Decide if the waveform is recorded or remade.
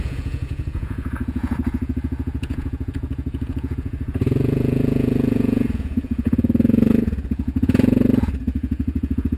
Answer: remade